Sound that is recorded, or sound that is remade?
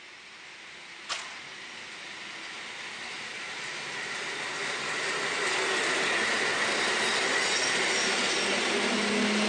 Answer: recorded